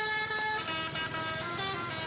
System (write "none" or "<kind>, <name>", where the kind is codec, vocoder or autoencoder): none